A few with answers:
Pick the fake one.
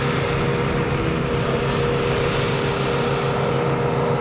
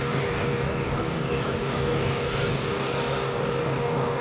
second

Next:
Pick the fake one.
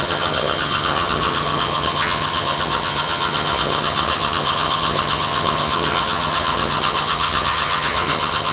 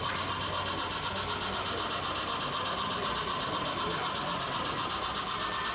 first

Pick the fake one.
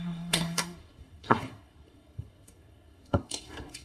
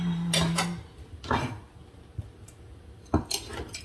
first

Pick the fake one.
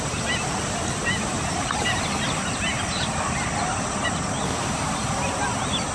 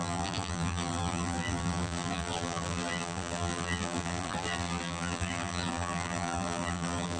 second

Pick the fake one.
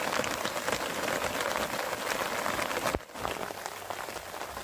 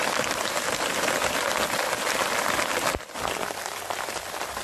second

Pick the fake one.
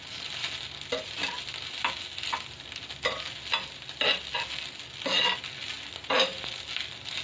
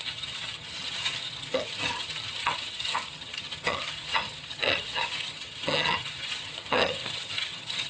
second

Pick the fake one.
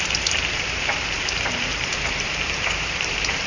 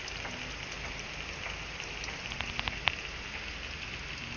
first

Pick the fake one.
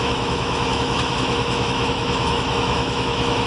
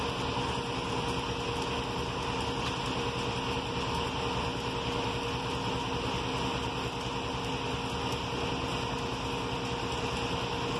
first